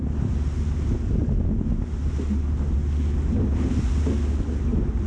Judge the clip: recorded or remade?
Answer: recorded